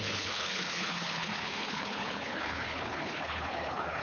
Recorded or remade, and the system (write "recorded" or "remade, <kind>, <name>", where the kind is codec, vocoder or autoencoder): remade, codec, HILCodec